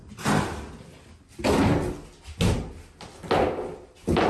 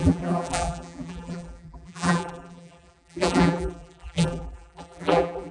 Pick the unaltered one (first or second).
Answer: first